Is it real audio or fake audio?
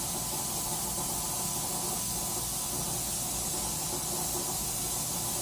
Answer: real